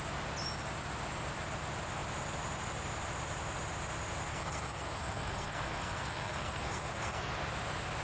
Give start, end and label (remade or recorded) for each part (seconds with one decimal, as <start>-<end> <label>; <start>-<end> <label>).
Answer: 0.0-4.3 recorded; 4.3-7.3 remade; 7.3-8.0 recorded